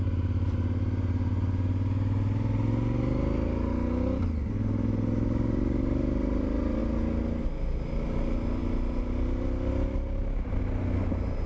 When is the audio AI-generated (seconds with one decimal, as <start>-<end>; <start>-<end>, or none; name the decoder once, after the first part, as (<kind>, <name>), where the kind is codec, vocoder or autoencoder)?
none